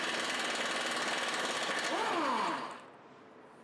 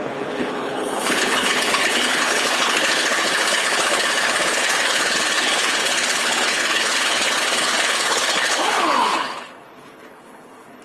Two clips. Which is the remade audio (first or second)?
second